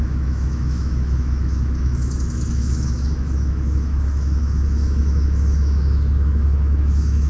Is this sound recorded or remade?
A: remade